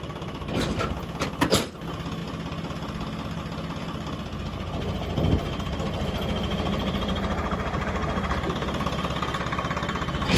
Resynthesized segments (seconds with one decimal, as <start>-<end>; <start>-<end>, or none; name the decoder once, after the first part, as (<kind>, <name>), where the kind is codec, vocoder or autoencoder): none